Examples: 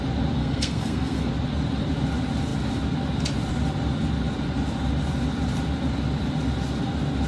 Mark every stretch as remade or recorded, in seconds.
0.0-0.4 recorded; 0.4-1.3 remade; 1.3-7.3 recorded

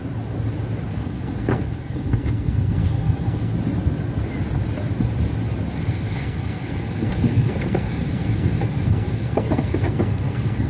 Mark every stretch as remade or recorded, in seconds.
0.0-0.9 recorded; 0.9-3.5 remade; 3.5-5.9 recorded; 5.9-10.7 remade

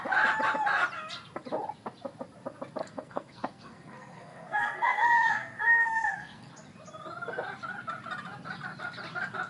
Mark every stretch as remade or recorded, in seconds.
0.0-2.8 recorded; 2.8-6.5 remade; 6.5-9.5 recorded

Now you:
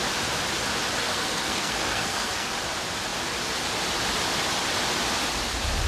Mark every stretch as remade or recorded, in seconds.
0.0-1.0 recorded; 1.0-2.5 remade; 2.5-5.9 recorded

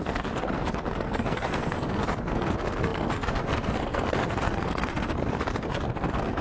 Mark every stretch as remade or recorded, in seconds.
0.0-6.4 remade